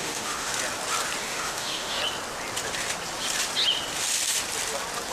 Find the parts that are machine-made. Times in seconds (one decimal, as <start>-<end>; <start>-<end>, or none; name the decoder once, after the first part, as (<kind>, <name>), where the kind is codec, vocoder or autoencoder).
0.0-0.5 (autoencoder, DAC-VAE); 1.2-2.0

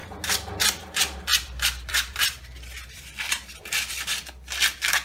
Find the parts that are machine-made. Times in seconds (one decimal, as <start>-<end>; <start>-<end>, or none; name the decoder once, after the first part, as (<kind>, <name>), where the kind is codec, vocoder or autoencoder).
0.9-5.0 (vocoder, BigVGAN v2)